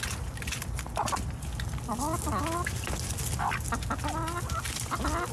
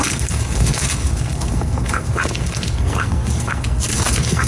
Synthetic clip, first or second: second